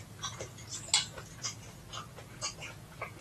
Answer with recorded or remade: recorded